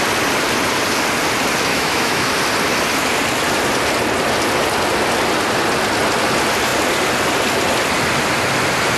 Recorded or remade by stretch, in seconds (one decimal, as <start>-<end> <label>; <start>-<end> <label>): 0.0-1.7 recorded; 1.7-2.3 remade; 2.3-9.0 recorded